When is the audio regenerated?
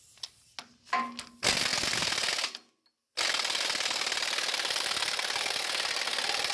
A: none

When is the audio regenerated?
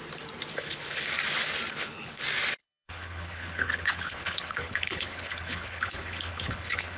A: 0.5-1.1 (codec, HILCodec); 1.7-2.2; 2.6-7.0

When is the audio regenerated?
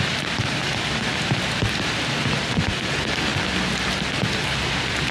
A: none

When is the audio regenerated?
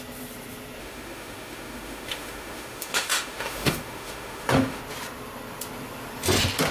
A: 0.8-4.8 (autoencoder, DAC-VAE)